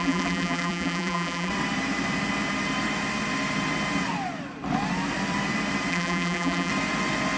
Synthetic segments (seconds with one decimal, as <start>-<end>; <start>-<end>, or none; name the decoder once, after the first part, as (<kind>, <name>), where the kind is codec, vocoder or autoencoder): 0.0-1.5 (vocoder, BigVGAN v2); 5.9-6.7